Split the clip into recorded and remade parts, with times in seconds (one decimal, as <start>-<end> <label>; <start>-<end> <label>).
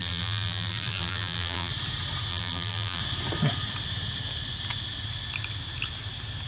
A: 0.0-1.7 remade; 1.7-2.3 recorded; 2.3-3.0 remade; 3.0-6.5 recorded